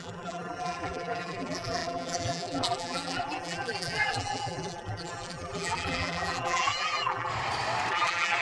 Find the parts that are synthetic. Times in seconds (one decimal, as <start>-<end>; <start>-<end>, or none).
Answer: 0.0-7.3; 7.9-8.4